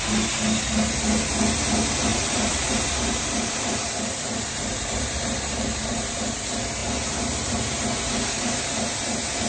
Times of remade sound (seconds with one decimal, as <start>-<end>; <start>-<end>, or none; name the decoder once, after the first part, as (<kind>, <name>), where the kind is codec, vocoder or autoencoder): 2.1-6.2 (vocoder, BigVGAN v2)